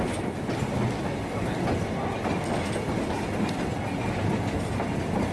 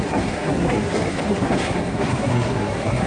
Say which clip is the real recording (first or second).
first